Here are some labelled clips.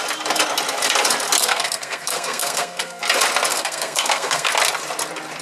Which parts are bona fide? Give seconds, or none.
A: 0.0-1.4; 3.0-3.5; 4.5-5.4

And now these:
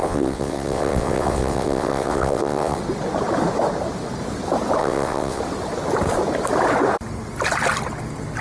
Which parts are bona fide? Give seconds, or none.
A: 2.8-4.8; 5.4-8.4

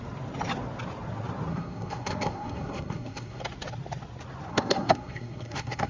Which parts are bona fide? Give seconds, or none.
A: 0.0-1.5; 3.4-4.5

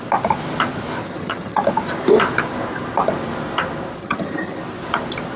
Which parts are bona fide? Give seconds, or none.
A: 0.0-1.0; 1.6-4.0; 4.6-5.4

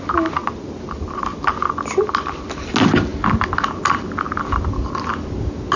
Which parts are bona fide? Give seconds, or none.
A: 0.0-5.8

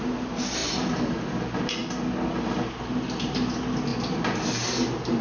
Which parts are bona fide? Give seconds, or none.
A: 0.0-0.6; 1.3-5.2

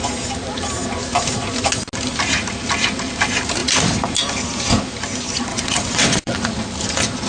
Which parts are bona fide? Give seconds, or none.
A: 0.0-5.5; 6.4-7.3